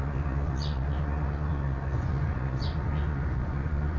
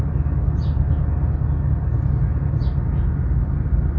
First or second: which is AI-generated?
first